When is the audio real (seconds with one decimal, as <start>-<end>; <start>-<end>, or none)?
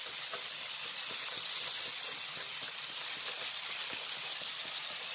0.0-2.5; 3.7-5.1